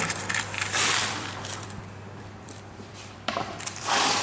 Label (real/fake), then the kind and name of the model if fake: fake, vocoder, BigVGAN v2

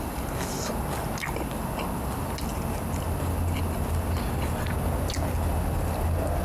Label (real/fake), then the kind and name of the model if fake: real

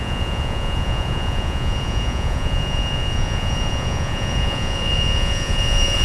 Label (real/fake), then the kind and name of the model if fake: fake, vocoder, Vocos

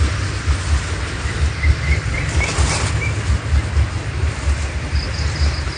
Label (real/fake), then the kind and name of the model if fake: real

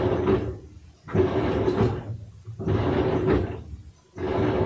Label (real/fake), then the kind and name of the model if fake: real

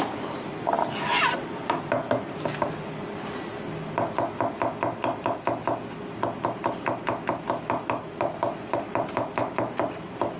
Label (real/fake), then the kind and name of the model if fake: real